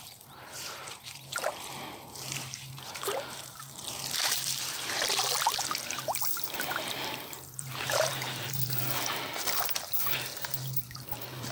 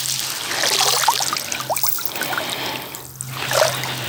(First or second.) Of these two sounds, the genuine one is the second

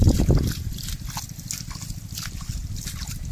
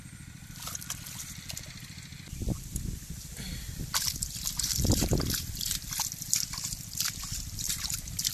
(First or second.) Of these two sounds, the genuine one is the first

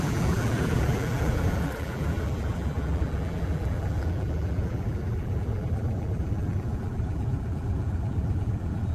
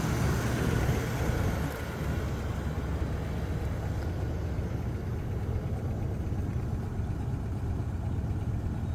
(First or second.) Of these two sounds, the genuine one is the second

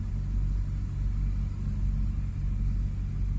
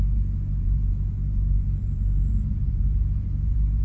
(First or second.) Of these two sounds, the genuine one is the first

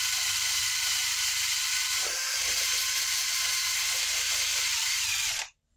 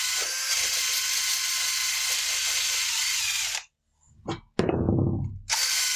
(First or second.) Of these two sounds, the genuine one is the second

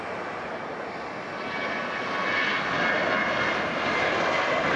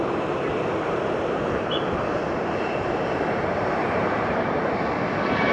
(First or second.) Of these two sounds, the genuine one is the first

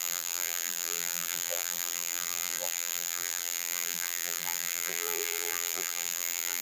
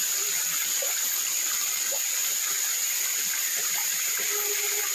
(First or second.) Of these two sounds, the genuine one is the second